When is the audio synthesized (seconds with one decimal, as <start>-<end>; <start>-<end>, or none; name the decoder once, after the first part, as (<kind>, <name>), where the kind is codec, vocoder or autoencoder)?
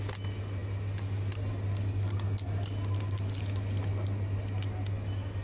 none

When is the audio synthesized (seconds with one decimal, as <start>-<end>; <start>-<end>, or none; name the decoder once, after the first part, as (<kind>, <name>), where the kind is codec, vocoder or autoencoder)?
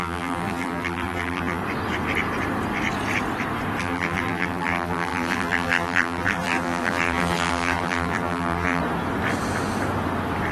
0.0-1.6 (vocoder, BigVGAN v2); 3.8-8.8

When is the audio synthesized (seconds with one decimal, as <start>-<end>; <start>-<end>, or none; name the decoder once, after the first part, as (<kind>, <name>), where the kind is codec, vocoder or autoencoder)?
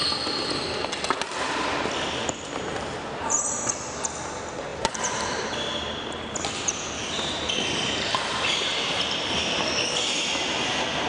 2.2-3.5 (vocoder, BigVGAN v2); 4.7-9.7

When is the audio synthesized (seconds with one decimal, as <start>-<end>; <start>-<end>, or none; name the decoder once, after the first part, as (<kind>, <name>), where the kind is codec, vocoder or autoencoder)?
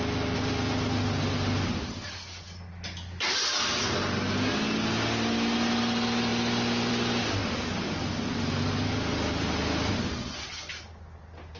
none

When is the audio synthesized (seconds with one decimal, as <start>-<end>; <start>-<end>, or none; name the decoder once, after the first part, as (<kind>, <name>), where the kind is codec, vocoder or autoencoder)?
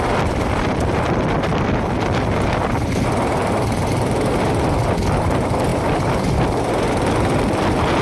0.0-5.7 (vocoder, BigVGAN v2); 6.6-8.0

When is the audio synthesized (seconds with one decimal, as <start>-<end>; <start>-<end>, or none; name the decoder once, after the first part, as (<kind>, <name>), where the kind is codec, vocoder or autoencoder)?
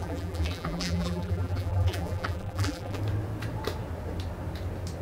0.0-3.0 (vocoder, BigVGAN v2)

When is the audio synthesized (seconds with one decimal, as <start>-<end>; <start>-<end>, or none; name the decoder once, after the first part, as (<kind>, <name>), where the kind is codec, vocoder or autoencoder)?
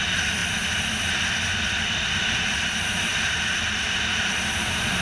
none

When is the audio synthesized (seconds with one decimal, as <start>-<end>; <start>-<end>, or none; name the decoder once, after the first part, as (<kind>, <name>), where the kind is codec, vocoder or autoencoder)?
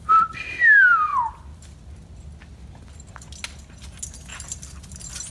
1.1-2.2 (vocoder, BigVGAN v2); 4.3-4.8